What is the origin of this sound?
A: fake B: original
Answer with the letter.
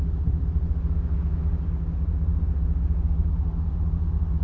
B